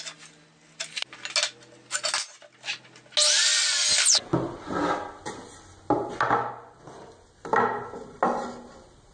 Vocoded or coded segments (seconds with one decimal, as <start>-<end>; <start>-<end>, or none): none